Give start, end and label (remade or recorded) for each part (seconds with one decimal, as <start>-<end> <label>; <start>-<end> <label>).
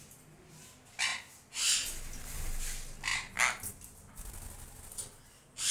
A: 0.0-5.7 recorded